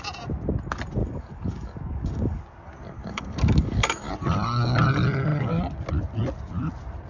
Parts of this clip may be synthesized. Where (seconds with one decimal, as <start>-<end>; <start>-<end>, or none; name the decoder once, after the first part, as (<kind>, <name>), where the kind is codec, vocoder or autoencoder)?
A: 1.0-2.4 (codec, DAC); 3.0-4.1